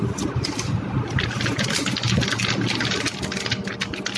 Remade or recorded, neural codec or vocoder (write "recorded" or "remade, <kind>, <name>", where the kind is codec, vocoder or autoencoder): recorded